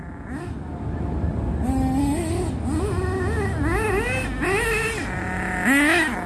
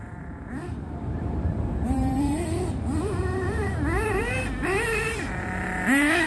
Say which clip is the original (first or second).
first